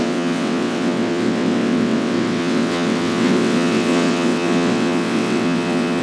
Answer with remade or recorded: remade